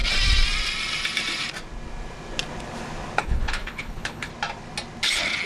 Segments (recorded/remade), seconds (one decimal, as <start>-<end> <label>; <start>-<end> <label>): 0.0-3.2 recorded; 3.2-4.3 remade; 4.3-5.5 recorded